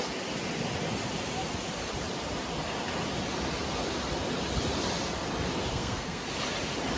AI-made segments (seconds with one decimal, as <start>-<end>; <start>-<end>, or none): 5.7-6.2